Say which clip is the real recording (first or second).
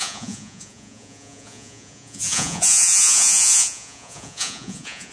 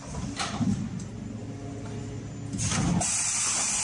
second